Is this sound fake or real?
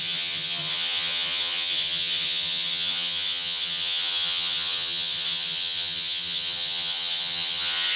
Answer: fake